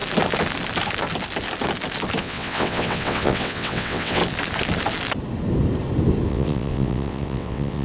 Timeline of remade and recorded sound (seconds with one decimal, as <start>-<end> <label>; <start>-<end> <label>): 0.0-2.2 recorded; 2.2-4.2 remade; 4.2-6.3 recorded; 6.3-7.8 remade